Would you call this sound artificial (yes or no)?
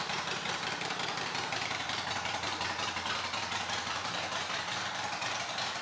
yes